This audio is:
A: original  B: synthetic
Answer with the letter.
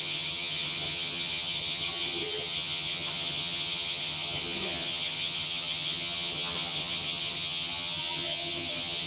B